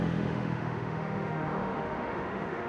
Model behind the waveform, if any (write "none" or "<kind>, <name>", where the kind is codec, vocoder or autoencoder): autoencoder, DAC-VAE